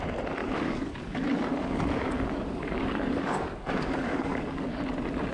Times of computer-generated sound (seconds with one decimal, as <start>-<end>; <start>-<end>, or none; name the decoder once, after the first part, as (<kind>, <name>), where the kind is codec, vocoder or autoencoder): 0.4-1.0 (codec, DAC); 1.5-4.7